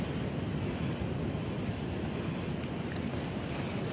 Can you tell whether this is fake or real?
real